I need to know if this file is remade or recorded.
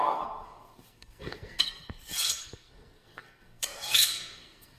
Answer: remade